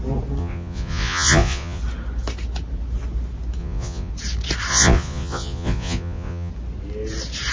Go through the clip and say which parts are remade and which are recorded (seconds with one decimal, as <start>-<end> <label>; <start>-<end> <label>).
0.0-0.4 recorded; 0.4-1.8 remade; 1.8-3.6 recorded; 3.6-4.1 remade; 4.1-4.7 recorded; 4.7-6.5 remade; 6.5-7.5 recorded